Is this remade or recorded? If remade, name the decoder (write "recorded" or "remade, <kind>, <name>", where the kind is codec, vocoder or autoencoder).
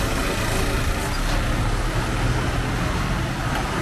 recorded